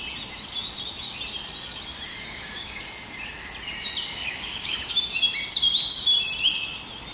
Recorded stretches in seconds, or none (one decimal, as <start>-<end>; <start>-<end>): 0.0-2.1; 2.8-4.1; 4.9-7.1